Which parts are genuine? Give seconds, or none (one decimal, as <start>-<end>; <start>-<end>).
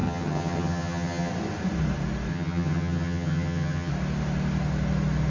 1.3-2.3; 3.9-5.3